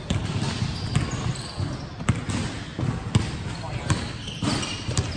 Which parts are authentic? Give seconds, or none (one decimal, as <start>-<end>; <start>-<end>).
0.0-5.2